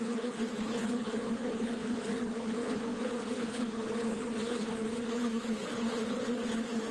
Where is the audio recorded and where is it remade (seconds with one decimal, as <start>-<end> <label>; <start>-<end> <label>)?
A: 0.0-6.9 remade